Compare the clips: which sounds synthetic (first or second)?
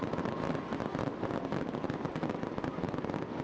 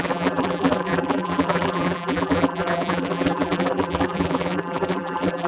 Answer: second